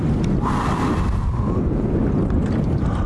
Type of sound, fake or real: real